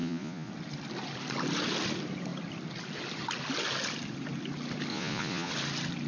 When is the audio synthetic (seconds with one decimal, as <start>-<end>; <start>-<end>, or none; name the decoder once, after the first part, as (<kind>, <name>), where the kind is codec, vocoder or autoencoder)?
0.0-0.5 (vocoder, Vocos); 4.9-5.5